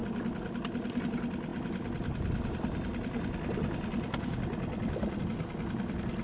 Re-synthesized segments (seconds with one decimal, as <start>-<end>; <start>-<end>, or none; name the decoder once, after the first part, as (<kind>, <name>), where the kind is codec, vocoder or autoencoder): none